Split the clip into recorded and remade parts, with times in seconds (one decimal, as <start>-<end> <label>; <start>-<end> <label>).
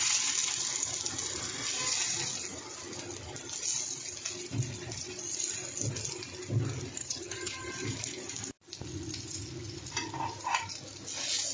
0.0-7.0 recorded; 7.0-7.7 remade; 7.7-11.5 recorded